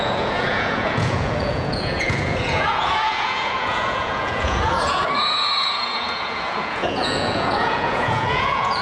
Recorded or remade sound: remade